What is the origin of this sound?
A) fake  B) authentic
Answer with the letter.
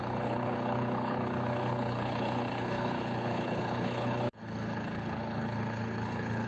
A